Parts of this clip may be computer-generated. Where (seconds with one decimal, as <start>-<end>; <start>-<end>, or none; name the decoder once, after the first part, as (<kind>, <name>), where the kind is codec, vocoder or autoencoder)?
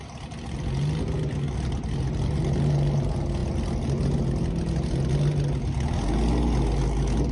none